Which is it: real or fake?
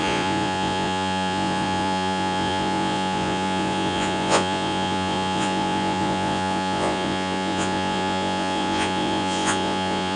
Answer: fake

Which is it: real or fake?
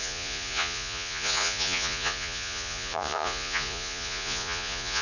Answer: fake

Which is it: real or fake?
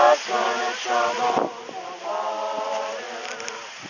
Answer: real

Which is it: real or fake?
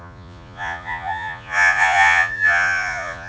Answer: fake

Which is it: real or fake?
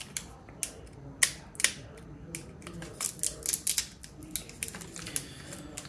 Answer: real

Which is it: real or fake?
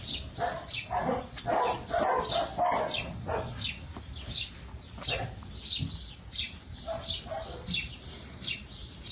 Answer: real